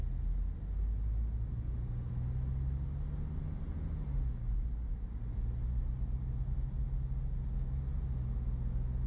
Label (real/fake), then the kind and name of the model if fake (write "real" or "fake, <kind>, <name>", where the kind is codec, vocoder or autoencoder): real